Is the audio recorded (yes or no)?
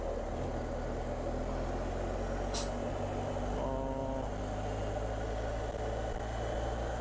yes